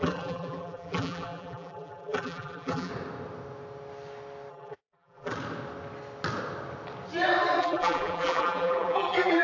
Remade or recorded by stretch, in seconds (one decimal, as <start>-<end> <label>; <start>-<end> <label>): 0.0-2.9 remade; 2.9-4.5 recorded; 4.5-5.3 remade; 5.3-7.6 recorded; 7.6-9.4 remade